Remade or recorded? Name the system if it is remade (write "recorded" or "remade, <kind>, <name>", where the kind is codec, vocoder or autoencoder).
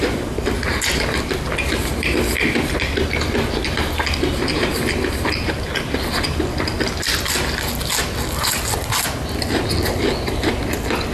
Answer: recorded